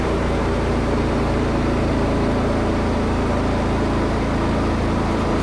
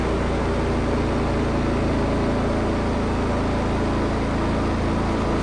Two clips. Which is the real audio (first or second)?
second